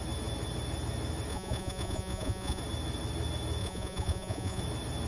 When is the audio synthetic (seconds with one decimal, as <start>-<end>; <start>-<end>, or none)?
1.3-2.6; 3.6-4.6